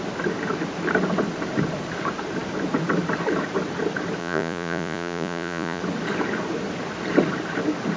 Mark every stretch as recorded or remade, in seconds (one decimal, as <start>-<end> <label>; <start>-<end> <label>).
0.0-4.2 recorded; 4.2-5.8 remade; 5.8-8.0 recorded